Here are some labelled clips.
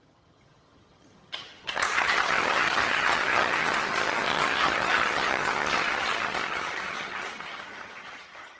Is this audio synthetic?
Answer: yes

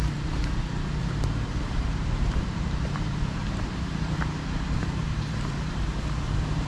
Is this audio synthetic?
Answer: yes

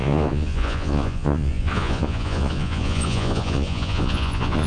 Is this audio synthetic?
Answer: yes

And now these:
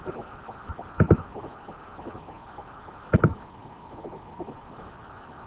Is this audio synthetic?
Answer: no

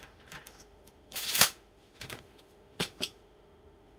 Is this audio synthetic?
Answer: yes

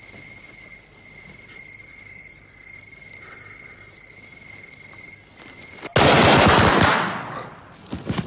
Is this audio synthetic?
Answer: no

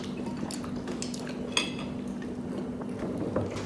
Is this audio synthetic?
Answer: no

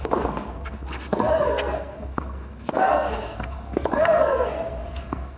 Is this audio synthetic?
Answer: yes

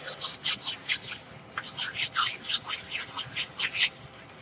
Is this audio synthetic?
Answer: no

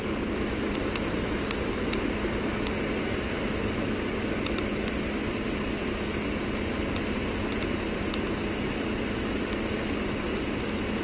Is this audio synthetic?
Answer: no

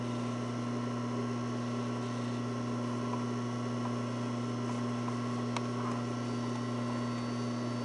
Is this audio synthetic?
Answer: no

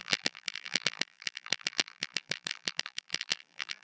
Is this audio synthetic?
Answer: yes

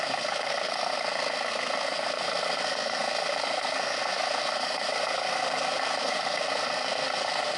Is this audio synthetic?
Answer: yes